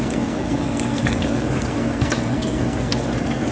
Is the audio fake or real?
fake